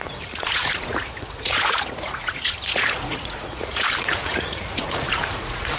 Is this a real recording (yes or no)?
no